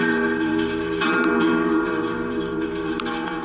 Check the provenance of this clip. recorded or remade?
remade